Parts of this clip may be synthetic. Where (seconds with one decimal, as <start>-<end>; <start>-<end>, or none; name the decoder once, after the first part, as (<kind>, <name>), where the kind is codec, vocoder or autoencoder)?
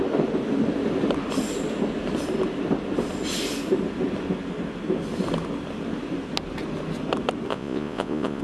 7.5-8.4 (vocoder, Vocos)